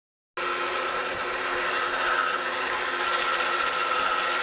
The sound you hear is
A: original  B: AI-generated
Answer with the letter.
A